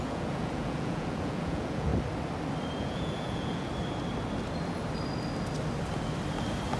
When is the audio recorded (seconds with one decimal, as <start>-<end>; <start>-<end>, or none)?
1.9-2.8; 3.7-6.8